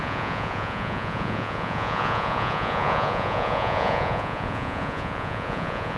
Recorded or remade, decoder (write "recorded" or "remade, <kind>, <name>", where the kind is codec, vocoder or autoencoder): remade, vocoder, Vocos